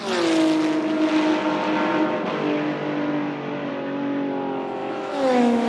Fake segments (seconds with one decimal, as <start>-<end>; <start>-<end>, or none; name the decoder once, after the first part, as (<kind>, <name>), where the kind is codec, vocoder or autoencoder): 4.8-5.7 (autoencoder, DAC-VAE)